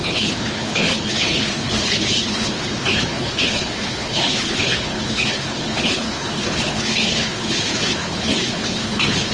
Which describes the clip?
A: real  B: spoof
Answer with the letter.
B